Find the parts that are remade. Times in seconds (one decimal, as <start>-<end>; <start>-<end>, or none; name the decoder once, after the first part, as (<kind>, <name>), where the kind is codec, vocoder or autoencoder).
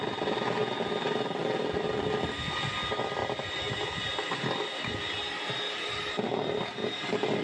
none